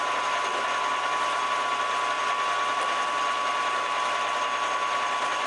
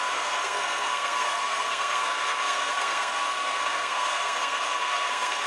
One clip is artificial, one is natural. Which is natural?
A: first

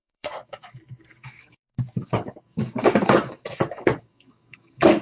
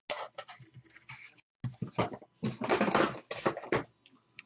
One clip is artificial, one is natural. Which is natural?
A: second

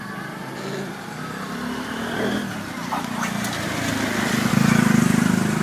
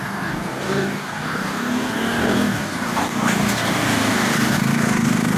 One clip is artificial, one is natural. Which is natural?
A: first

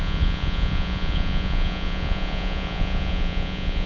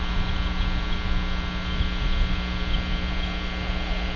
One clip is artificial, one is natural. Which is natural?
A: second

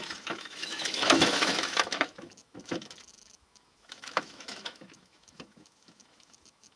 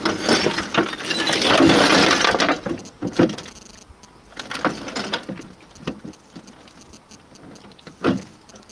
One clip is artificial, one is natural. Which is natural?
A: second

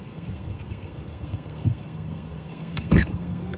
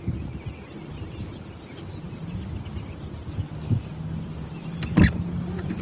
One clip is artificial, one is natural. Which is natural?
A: second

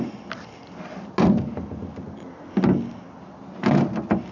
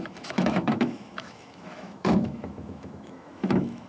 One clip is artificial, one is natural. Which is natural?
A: first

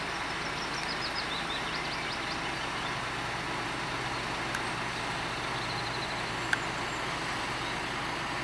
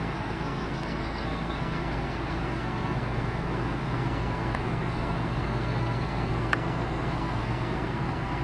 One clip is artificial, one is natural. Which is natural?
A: first